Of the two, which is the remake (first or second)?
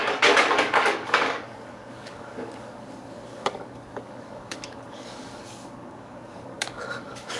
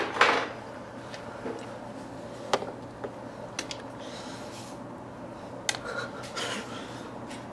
first